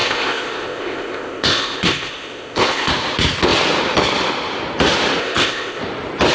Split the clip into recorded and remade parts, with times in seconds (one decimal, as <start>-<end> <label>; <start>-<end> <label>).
0.0-2.9 remade; 2.9-5.2 recorded; 5.2-5.8 remade; 5.8-6.3 recorded

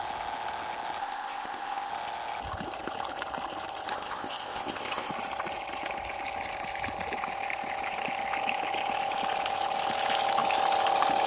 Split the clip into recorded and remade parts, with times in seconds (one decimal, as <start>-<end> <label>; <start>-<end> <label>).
0.0-1.0 recorded; 1.0-1.9 remade; 1.9-3.9 recorded; 3.9-5.1 remade; 5.1-11.3 recorded

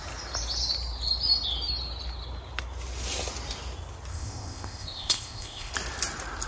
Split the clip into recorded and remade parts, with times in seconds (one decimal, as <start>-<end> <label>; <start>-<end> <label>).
0.0-4.1 recorded; 4.1-5.7 remade; 5.7-6.5 recorded

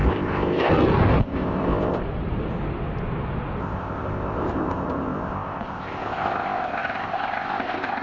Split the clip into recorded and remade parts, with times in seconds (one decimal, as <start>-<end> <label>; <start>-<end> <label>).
0.0-0.7 remade; 0.7-1.2 recorded; 1.2-2.0 remade; 2.0-3.6 recorded; 3.6-8.0 remade

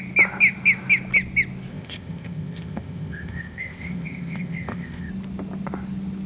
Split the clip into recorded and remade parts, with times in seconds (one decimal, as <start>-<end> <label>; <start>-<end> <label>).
0.0-1.7 recorded; 1.7-5.1 remade; 5.1-6.3 recorded

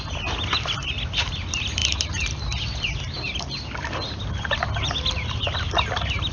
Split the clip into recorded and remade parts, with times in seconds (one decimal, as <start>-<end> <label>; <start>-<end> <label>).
0.0-6.3 recorded

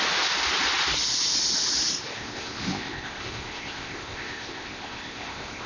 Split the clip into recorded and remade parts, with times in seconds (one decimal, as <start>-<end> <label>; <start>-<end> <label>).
0.0-2.1 recorded; 2.1-5.7 remade